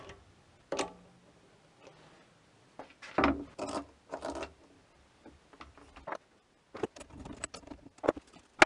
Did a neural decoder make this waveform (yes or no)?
no